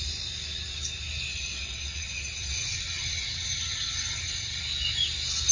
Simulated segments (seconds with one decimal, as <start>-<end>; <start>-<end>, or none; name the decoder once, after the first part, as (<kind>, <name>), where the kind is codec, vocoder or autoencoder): 1.3-4.6 (vocoder, WaveNeXt)